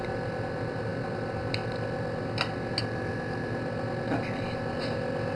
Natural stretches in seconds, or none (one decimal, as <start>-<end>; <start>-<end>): 0.0-5.4